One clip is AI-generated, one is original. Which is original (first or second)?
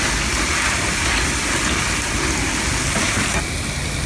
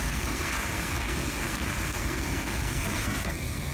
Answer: first